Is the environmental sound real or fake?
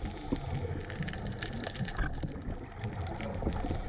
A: real